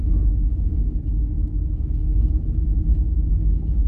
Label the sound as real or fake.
fake